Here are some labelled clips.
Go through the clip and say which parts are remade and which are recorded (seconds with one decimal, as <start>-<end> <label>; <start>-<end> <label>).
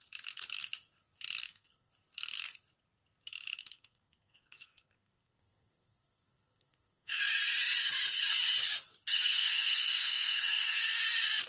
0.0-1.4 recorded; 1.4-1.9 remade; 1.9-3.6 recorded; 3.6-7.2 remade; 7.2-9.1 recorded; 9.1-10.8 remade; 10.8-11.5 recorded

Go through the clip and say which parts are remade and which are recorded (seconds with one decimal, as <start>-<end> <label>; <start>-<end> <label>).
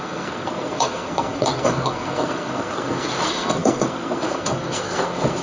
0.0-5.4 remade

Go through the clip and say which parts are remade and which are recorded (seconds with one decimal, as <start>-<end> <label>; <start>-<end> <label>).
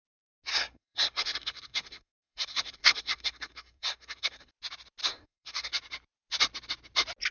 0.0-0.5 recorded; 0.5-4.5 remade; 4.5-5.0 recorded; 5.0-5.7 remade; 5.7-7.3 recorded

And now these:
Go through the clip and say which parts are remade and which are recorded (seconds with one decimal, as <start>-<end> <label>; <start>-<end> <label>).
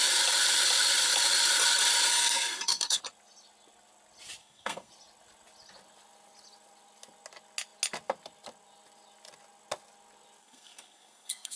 0.0-2.1 recorded; 2.1-3.0 remade; 3.0-4.4 recorded; 4.4-4.9 remade; 4.9-10.4 recorded; 10.4-11.6 remade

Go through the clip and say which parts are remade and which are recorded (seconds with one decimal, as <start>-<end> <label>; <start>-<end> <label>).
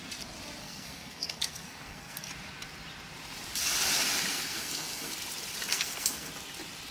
0.0-0.6 recorded; 0.6-2.3 remade; 2.3-4.3 recorded; 4.3-5.1 remade; 5.1-5.7 recorded; 5.7-6.3 remade; 6.3-6.9 recorded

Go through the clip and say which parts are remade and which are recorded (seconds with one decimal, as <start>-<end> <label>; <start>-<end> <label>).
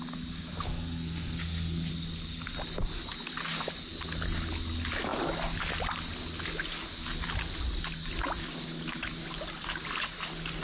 0.0-0.7 recorded; 0.7-1.9 remade; 1.9-10.6 recorded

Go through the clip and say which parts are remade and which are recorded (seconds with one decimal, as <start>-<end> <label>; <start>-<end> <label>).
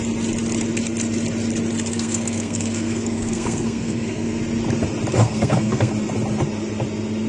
0.0-1.9 recorded; 1.9-4.4 remade; 4.4-5.2 recorded; 5.2-5.9 remade; 5.9-7.3 recorded